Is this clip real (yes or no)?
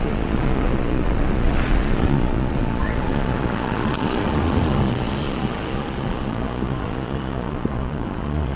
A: no